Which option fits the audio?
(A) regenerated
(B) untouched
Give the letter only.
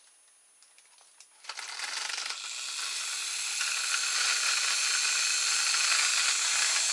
B